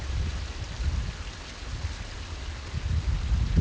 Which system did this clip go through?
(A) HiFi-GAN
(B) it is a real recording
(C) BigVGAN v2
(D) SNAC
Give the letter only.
B